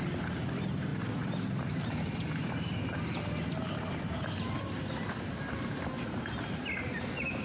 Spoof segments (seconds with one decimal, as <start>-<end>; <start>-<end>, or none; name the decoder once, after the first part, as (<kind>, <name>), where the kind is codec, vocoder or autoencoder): none